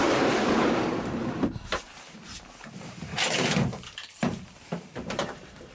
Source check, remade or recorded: remade